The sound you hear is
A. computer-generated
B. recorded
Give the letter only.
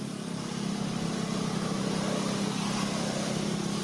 B